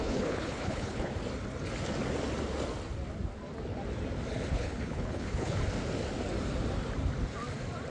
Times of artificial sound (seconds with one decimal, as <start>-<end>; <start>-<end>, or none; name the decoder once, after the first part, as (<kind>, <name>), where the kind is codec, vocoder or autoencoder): 0.0-1.1 (codec, HILCodec); 4.5-5.6